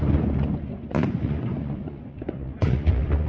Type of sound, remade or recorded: remade